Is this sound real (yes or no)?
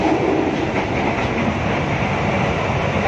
yes